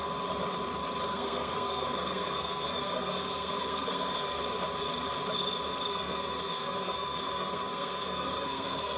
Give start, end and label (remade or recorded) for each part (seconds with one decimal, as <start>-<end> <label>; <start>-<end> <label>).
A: 0.0-1.1 recorded; 1.1-4.4 remade; 4.4-5.9 recorded; 5.9-9.0 remade